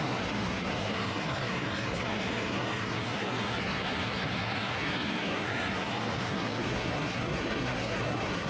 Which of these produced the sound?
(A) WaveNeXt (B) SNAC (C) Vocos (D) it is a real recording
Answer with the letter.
B